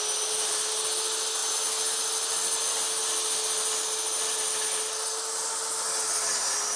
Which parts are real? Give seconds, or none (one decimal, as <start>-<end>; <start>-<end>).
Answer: 0.0-6.8